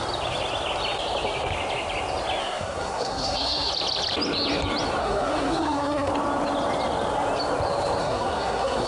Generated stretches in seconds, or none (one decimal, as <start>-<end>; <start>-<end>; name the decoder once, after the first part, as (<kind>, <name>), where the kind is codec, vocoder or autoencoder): 2.4-3.7 (codec, SNAC); 5.0-6.1; 8.0-8.9